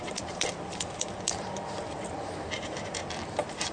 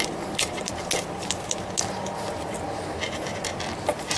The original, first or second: second